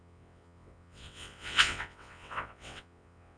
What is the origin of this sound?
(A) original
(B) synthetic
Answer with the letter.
B